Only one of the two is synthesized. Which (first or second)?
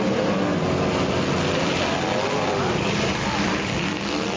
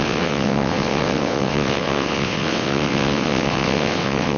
second